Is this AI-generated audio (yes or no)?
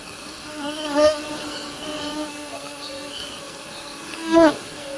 yes